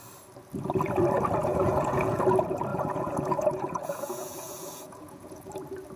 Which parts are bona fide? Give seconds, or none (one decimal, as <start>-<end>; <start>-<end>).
0.0-1.5; 2.2-2.7; 5.5-6.0